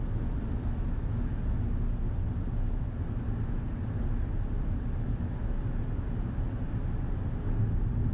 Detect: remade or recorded recorded